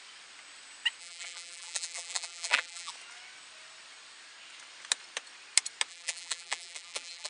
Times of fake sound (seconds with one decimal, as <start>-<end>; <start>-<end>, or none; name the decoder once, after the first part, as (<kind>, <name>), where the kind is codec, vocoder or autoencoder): 1.0-2.9 (vocoder, BigVGAN v2); 5.9-7.3